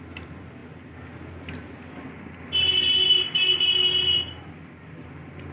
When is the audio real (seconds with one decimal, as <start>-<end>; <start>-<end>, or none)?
0.0-5.5